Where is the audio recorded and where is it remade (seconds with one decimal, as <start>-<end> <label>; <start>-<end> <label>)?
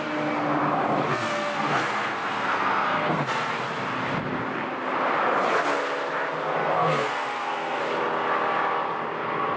0.0-1.1 recorded; 1.1-3.5 remade; 3.5-6.6 recorded; 6.6-7.8 remade; 7.8-9.6 recorded